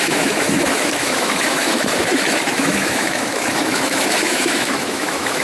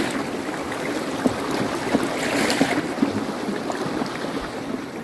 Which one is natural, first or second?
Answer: second